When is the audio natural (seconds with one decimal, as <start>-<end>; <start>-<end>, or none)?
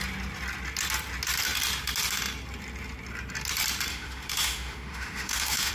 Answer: 0.0-3.9